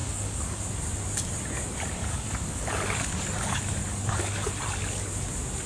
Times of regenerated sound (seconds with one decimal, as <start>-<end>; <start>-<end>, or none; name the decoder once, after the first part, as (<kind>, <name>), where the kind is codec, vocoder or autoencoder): 0.0-0.6 (codec, DAC); 2.0-4.5

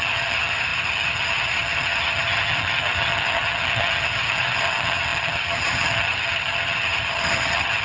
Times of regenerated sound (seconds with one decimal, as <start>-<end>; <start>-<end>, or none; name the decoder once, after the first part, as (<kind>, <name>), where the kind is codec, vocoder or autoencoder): 0.0-7.8 (vocoder, HiFi-GAN)